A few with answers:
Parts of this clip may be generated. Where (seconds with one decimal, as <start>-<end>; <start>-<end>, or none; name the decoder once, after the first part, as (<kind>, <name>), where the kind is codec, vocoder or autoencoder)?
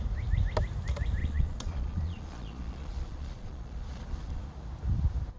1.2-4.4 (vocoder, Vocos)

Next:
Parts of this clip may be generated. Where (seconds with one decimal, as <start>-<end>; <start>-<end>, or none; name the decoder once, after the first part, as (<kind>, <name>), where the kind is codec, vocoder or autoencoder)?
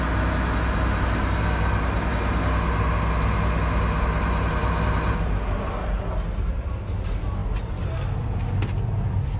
none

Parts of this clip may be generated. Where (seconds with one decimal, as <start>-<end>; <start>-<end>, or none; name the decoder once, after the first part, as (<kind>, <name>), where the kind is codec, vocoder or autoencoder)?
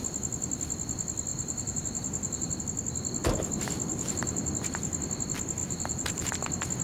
1.3-2.6 (vocoder, BigVGAN v2); 3.9-4.5; 5.6-6.3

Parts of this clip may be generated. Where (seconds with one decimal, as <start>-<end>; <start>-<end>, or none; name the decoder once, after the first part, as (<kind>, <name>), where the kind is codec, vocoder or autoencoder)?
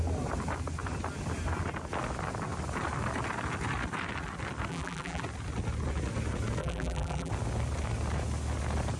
4.7-5.2 (vocoder, BigVGAN v2); 6.6-7.3